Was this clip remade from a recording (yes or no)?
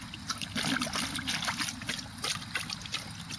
no